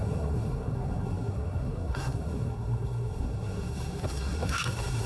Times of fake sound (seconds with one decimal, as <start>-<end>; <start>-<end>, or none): 0.0-5.1